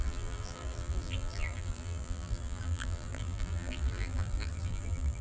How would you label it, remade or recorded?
remade